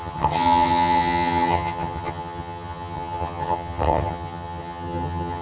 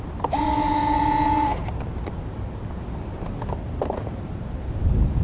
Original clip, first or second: second